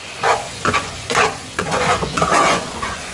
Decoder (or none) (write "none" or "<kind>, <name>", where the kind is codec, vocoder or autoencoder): vocoder, Vocos